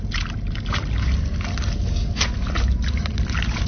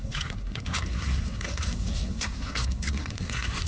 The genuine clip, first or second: first